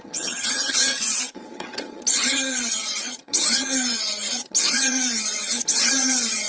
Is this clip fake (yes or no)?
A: yes